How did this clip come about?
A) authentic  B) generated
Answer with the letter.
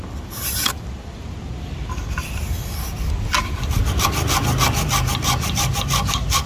A